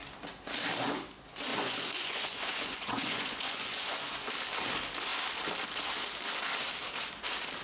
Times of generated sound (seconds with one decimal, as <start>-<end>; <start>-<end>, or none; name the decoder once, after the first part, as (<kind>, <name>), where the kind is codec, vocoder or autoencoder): 1.5-4.3 (vocoder, Vocos)